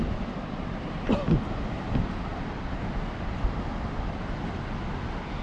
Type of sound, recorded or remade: recorded